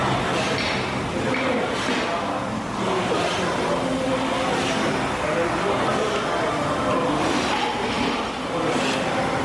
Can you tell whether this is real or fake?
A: real